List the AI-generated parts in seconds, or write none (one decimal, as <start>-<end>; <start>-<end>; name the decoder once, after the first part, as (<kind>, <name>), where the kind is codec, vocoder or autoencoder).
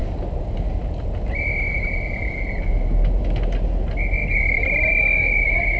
none